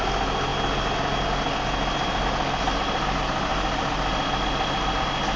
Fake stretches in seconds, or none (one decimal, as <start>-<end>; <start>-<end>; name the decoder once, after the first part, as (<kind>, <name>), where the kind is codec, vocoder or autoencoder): none